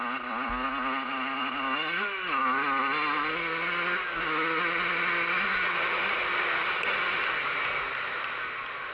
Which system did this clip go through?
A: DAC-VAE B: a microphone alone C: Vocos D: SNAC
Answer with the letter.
B